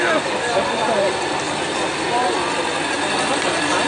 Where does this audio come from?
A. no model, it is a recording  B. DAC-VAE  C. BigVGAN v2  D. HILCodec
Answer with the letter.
A